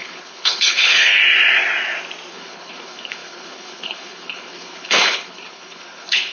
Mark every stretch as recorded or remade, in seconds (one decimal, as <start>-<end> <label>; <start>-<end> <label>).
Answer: 0.0-1.2 remade; 1.2-2.3 recorded; 2.3-6.3 remade